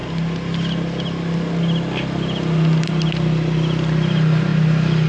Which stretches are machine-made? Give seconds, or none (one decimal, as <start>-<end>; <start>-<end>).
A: none